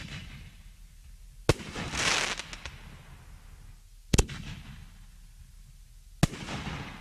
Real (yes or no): yes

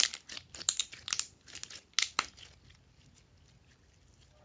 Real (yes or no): yes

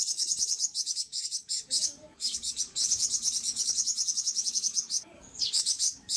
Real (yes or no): no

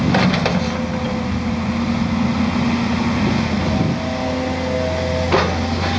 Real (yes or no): yes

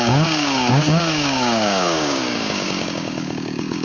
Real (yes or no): no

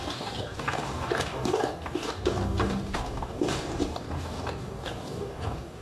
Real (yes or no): no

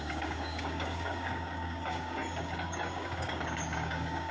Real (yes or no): no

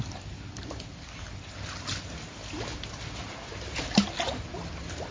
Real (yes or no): yes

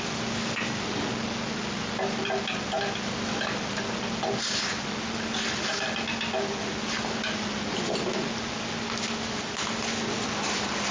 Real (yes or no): yes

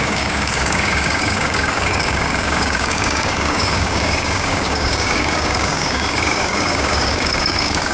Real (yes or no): no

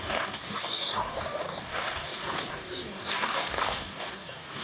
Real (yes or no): no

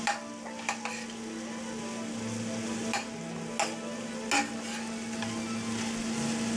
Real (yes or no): yes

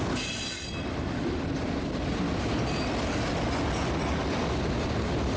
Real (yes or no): yes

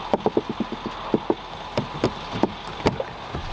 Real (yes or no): yes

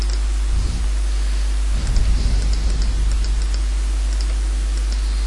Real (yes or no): yes